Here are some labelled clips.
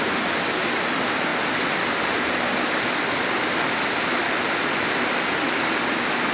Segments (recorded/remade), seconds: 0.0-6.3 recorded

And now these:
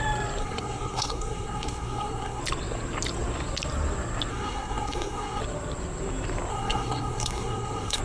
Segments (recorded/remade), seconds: 0.0-0.4 recorded; 0.4-2.4 remade; 2.4-4.3 recorded; 4.3-5.4 remade; 5.4-6.5 recorded; 6.5-8.0 remade